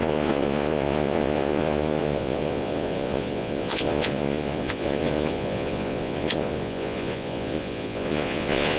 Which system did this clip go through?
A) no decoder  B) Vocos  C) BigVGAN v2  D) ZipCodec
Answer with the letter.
B